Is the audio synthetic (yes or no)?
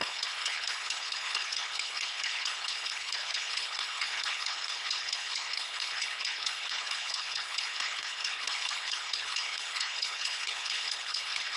yes